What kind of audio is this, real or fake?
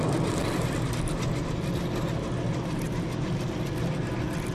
real